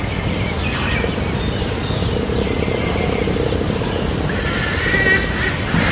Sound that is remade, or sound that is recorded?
recorded